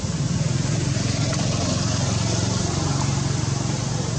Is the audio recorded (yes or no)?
yes